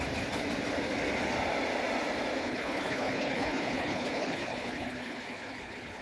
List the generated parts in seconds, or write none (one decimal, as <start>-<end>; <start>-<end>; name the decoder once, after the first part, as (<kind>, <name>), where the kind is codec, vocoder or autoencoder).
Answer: 2.4-6.0 (codec, HILCodec)